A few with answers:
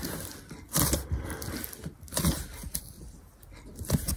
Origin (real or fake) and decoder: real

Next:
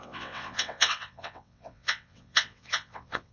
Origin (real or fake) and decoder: fake, vocoder, WaveNeXt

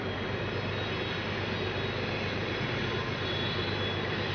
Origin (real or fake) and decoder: real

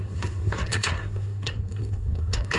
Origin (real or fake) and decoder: fake, codec, SNAC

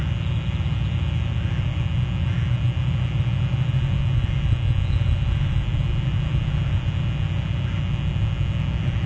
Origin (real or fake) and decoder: real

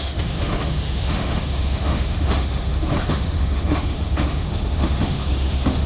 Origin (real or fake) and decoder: fake, autoencoder, DAC-VAE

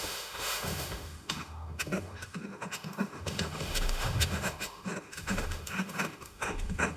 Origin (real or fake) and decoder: fake, autoencoder, DAC-VAE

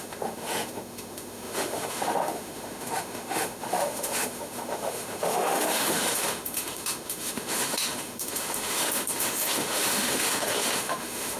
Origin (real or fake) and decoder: fake, autoencoder, DAC-VAE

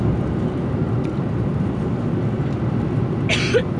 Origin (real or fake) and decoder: real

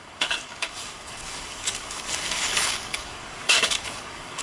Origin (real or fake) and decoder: fake, codec, DAC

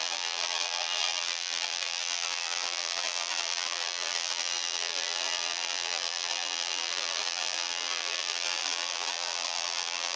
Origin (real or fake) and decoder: fake, vocoder, BigVGAN v2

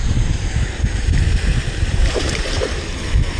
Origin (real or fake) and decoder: fake, vocoder, BigVGAN v2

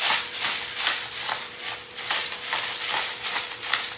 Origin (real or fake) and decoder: real